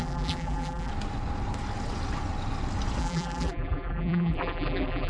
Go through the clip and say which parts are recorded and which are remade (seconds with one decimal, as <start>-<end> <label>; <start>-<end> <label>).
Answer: 0.0-0.9 remade; 0.9-3.0 recorded; 3.0-5.1 remade

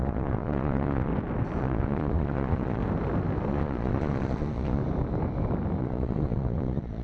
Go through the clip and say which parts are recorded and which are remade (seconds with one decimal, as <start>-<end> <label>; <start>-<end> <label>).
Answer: 0.0-1.1 remade; 1.1-1.6 recorded; 1.6-2.8 remade; 2.8-3.5 recorded; 3.5-4.8 remade; 4.8-5.8 recorded; 5.8-7.0 remade

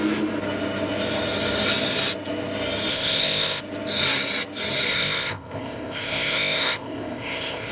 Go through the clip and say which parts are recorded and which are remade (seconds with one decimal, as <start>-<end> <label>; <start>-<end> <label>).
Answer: 0.0-2.9 recorded; 2.9-3.6 remade; 3.6-4.9 recorded; 4.9-7.7 remade